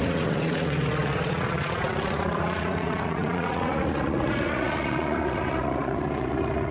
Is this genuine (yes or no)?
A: no